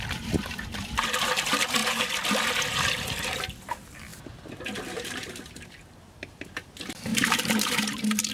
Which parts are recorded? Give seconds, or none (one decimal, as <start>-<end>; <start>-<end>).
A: 0.0-4.1; 5.5-7.1